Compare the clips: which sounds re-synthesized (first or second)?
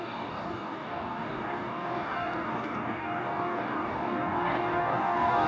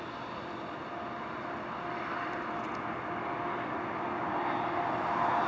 first